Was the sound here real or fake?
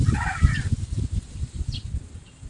real